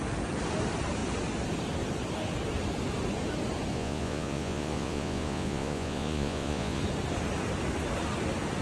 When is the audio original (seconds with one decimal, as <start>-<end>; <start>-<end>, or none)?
0.0-3.7; 6.8-8.6

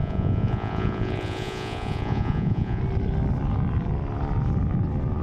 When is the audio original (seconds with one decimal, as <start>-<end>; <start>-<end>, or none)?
2.8-5.2

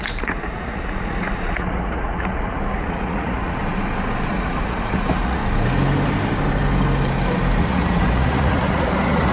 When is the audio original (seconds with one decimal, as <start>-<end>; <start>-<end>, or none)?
3.6-4.3; 5.4-7.6

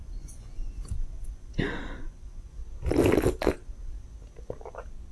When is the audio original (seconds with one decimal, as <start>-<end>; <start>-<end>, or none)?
2.6-3.5; 4.0-5.1

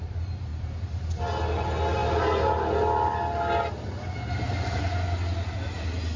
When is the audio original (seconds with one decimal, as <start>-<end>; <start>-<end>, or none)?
0.0-6.2

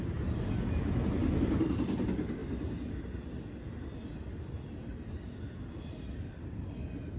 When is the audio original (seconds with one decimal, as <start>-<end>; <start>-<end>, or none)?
0.0-7.2

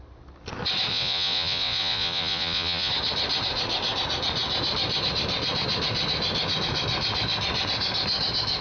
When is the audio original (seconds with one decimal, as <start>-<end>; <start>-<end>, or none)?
0.0-0.9; 2.9-8.6